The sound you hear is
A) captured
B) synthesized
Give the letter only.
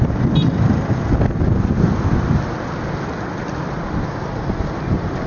A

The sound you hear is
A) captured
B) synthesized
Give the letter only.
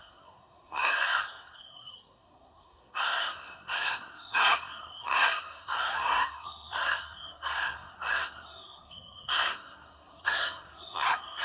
B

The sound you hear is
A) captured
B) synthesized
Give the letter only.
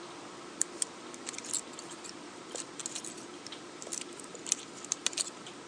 B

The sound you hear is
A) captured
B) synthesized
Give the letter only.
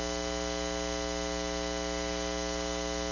A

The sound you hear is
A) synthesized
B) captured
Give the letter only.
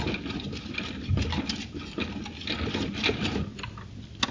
B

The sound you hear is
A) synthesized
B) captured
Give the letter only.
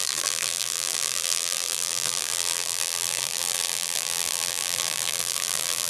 A